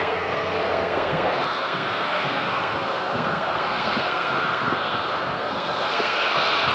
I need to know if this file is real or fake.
fake